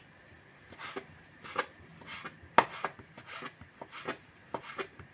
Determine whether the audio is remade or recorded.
recorded